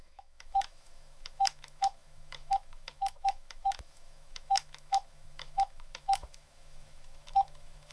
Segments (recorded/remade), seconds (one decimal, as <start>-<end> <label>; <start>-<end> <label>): 0.0-7.9 remade